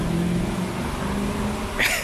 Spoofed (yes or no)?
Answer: no